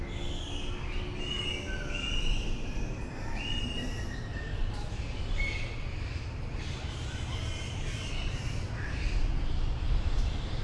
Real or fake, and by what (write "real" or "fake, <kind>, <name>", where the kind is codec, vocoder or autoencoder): real